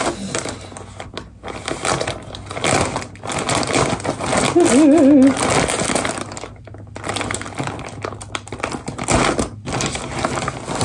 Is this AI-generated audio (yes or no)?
no